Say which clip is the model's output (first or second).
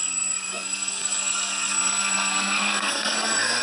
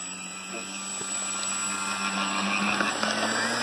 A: first